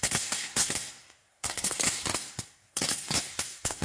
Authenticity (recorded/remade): remade